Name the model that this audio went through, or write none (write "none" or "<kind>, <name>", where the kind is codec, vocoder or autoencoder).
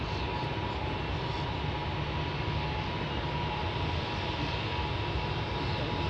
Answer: none